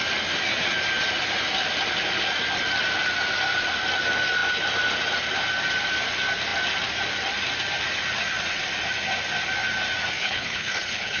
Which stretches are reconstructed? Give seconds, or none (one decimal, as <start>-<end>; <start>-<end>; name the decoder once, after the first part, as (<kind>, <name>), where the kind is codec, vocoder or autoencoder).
10.2-11.2 (codec, HILCodec)